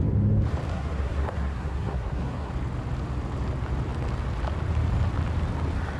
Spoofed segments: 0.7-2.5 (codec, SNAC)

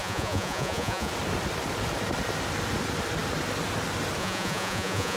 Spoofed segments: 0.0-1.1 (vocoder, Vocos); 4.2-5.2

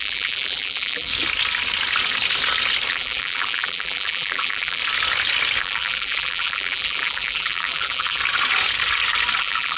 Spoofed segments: 0.0-1.1 (vocoder, BigVGAN v2); 2.9-4.8; 5.6-8.2; 9.4-9.8

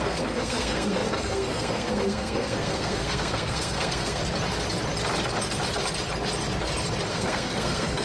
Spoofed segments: 0.0-4.2 (codec, SNAC); 7.1-8.0

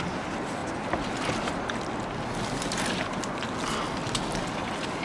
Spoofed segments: none

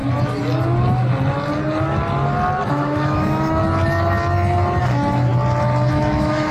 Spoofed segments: 2.7-3.6 (autoencoder, DAC-VAE); 4.8-5.3; 5.9-6.5

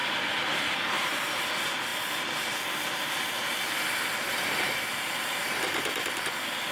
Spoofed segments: none

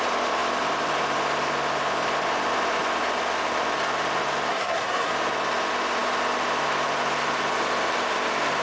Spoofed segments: 4.5-5.1 (codec, SNAC)